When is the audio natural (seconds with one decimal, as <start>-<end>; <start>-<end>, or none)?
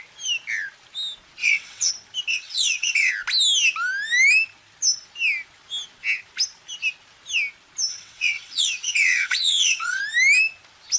0.0-1.4; 1.9-2.3; 3.1-7.9; 10.0-11.0